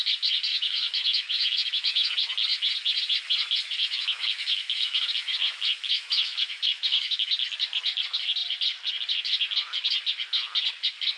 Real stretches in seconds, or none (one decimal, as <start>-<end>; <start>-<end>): 0.0-0.5; 2.1-3.8; 7.3-11.2